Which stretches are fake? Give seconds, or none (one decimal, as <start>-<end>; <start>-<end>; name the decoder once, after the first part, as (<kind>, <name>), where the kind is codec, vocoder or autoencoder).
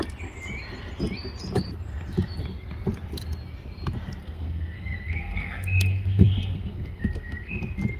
4.2-7.6 (codec, SNAC)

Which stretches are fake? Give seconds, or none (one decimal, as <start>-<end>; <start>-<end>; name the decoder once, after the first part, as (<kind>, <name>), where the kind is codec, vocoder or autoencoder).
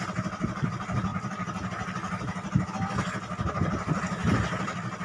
none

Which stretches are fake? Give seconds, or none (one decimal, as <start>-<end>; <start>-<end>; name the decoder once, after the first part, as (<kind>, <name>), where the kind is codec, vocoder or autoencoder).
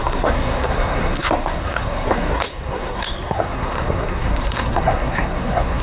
0.0-5.8 (codec, SNAC)